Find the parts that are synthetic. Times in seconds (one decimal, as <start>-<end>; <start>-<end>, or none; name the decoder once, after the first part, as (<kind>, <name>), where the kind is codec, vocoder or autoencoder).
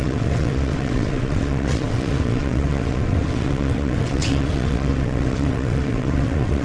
0.0-6.6 (vocoder, WaveNeXt)